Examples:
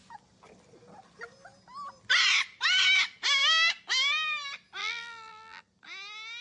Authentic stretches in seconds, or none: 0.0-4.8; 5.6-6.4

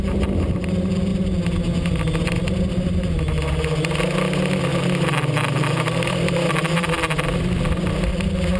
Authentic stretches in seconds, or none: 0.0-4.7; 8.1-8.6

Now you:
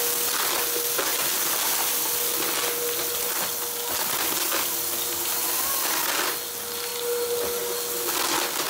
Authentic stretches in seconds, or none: 0.0-8.7

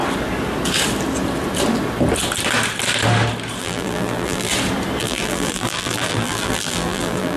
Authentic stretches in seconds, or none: 0.0-3.6; 4.5-5.0

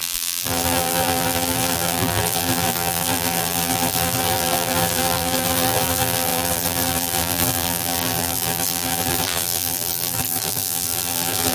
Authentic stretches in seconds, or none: none

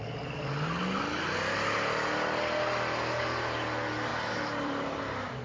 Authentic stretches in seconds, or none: 0.0-4.1; 5.0-5.4

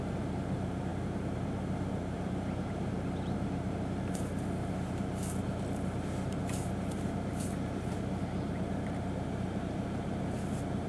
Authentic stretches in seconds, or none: none